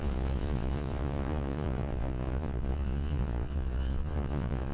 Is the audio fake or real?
fake